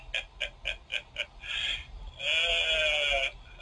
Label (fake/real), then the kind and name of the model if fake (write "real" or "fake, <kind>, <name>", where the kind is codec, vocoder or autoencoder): real